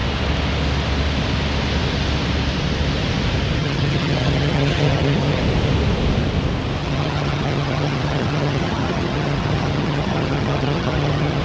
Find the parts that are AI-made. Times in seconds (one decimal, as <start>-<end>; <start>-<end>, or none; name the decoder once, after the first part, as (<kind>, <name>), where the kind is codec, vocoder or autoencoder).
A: 3.6-5.4 (vocoder, HiFi-GAN); 6.8-11.4